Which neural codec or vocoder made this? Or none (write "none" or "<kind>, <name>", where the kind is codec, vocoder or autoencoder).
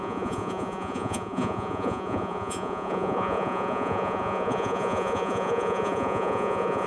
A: vocoder, Vocos